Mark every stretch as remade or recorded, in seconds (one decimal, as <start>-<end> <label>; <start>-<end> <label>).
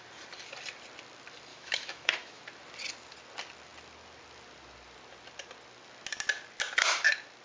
0.0-1.5 recorded; 1.5-2.4 remade; 2.4-7.4 recorded